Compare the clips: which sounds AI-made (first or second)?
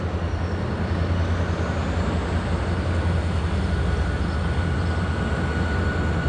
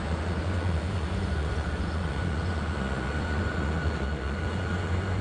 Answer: second